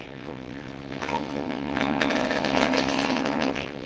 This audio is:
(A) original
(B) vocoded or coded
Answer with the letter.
B